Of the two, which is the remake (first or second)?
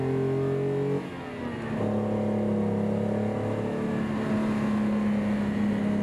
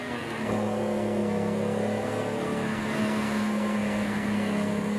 second